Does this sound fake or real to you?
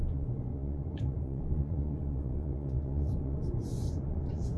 fake